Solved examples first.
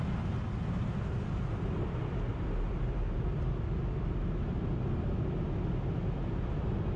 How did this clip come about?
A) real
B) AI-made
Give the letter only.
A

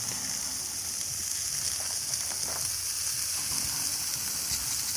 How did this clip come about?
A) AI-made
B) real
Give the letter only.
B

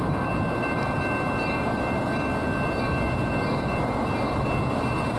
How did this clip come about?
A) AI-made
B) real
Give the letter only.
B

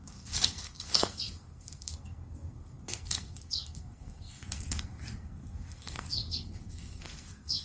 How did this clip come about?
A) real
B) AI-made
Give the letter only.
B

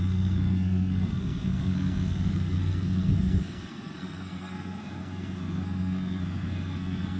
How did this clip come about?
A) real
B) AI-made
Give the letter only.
B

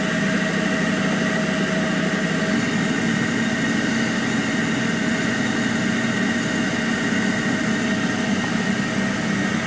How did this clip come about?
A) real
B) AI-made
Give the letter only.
A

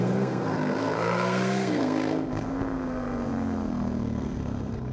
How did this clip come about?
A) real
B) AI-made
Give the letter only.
B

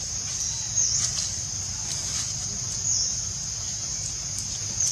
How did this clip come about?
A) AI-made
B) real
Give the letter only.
B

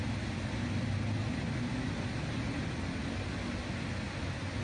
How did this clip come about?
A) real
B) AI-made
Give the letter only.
A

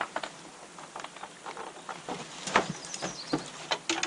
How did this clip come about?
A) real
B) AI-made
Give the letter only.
A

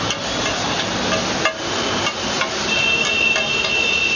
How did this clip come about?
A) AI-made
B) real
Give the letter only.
B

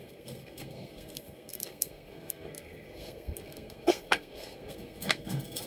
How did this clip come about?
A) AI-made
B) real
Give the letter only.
A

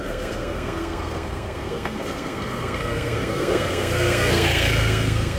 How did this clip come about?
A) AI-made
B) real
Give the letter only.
A